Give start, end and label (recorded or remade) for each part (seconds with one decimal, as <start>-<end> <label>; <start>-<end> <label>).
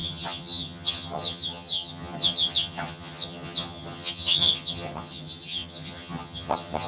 0.0-6.9 remade